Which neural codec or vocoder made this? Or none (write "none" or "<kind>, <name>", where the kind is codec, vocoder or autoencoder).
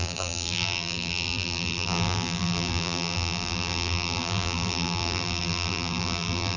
vocoder, BigVGAN v2